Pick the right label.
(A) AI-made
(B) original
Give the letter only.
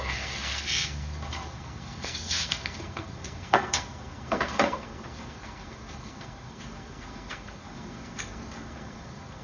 A